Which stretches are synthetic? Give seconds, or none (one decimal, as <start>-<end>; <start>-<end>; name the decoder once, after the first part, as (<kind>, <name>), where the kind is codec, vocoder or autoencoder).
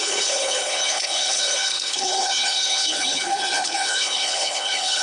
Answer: 0.0-5.0 (codec, HILCodec)